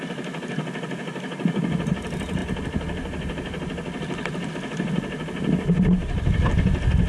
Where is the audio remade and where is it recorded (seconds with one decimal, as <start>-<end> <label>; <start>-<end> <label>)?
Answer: 0.0-7.1 recorded

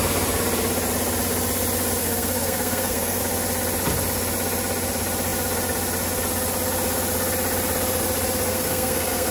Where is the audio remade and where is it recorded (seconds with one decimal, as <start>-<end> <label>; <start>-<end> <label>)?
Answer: 0.0-2.0 recorded; 2.0-3.2 remade; 3.2-8.5 recorded; 8.5-9.3 remade

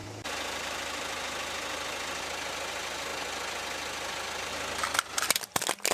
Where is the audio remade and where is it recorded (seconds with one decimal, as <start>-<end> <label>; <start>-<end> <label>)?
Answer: 0.0-5.9 recorded